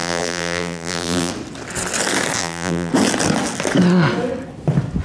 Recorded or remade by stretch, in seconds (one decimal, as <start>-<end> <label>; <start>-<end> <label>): 0.0-1.3 remade; 1.3-2.4 recorded; 2.4-2.9 remade; 2.9-5.0 recorded